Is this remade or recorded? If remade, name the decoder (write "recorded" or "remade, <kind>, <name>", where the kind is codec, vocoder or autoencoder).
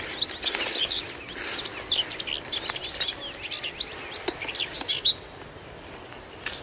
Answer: recorded